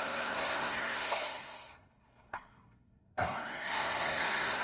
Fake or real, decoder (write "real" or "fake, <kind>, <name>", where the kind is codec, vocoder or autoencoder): fake, codec, SNAC